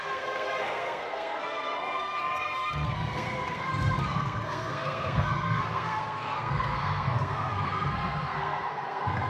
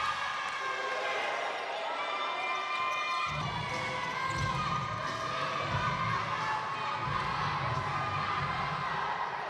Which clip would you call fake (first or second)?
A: first